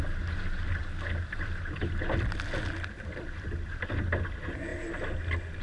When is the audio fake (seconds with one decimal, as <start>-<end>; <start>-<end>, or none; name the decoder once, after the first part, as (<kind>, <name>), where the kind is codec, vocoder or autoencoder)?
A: none